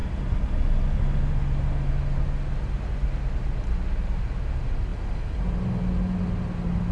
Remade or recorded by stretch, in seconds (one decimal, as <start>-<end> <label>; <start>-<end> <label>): 0.0-4.9 recorded; 4.9-5.4 remade; 5.4-6.9 recorded